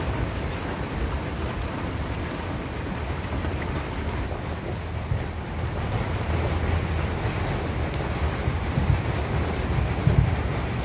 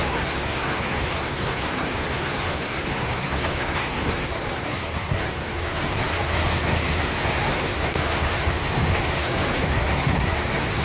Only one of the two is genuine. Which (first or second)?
first